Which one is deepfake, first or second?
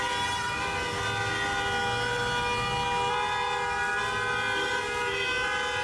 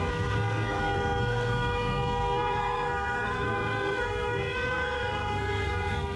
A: second